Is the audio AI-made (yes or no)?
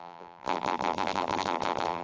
yes